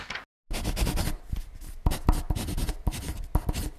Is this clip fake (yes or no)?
no